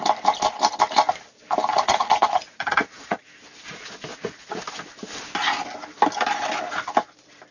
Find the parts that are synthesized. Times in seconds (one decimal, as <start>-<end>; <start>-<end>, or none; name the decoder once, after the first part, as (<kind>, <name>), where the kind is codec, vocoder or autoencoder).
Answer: 1.7-3.4 (vocoder, Vocos); 4.1-4.6